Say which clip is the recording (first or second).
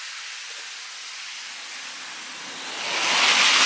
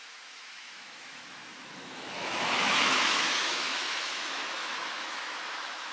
first